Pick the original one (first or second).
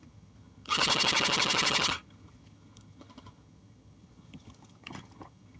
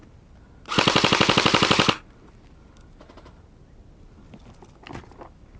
second